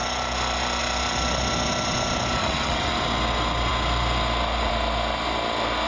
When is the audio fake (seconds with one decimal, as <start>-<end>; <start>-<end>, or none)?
2.4-2.9